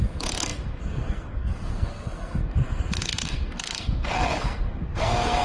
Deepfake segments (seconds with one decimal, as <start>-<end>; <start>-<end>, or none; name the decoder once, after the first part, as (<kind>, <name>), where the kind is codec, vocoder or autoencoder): 0.0-5.4 (codec, SNAC)